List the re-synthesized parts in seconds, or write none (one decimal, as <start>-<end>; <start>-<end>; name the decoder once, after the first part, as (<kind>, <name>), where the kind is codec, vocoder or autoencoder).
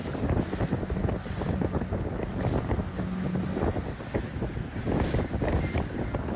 none